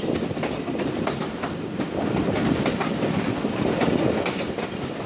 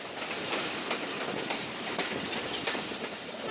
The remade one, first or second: first